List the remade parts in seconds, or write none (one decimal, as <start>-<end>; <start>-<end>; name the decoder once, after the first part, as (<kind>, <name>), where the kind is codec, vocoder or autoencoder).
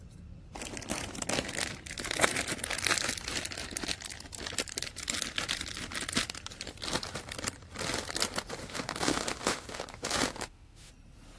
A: 8.6-10.9 (autoencoder, DAC-VAE)